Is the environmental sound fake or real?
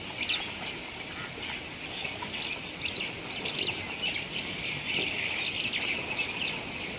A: real